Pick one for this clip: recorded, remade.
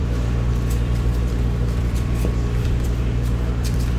remade